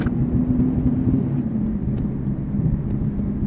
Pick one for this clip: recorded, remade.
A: recorded